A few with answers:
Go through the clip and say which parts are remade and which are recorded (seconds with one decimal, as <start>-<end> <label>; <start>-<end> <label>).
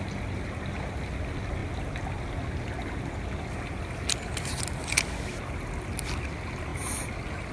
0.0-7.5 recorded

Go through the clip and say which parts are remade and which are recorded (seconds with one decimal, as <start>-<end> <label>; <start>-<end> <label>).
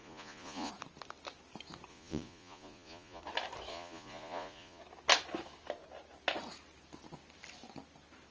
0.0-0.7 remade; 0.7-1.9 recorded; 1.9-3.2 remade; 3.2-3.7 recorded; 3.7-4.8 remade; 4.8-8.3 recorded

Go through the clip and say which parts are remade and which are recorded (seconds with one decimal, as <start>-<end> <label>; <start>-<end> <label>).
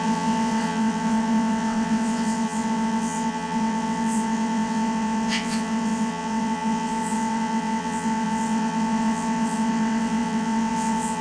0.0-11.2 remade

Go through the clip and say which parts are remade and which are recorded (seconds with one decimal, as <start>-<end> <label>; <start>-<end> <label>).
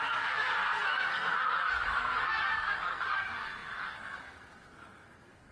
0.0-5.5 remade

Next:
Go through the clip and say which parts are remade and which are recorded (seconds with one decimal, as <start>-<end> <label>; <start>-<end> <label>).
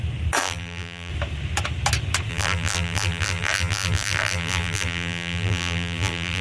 0.0-0.4 recorded; 0.4-1.1 remade; 1.1-2.3 recorded; 2.3-6.4 remade